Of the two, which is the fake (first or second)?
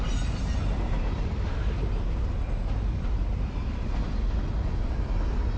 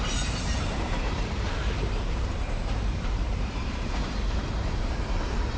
second